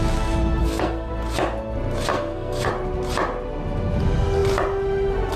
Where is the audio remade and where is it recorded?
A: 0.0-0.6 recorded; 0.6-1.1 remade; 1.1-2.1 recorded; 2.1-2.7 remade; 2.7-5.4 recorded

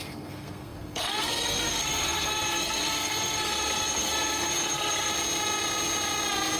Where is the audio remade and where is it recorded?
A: 0.0-5.1 remade; 5.1-6.6 recorded

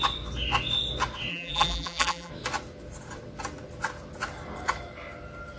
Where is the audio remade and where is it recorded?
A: 0.0-1.3 recorded; 1.3-2.3 remade; 2.3-5.6 recorded